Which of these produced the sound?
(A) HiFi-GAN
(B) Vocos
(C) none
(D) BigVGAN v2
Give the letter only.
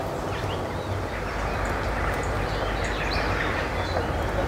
C